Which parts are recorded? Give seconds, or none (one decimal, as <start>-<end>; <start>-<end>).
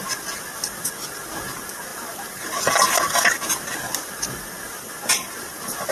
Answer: 0.0-1.9; 3.2-5.9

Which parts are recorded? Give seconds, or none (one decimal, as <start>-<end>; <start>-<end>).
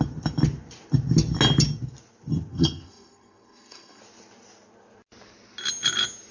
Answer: 0.0-2.5; 4.0-6.3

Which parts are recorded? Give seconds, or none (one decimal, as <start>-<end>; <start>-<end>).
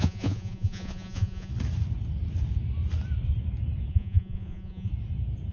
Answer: 1.5-3.9; 4.9-5.5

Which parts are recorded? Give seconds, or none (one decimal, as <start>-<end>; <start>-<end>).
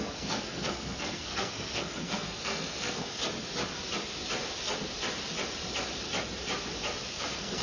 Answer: 3.2-7.1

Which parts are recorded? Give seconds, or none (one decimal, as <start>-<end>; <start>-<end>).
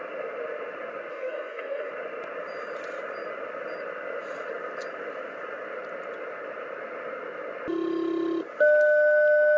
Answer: 0.0-1.1; 1.9-9.6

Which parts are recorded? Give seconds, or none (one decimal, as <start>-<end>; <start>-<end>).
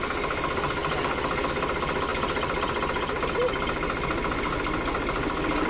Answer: 0.0-5.7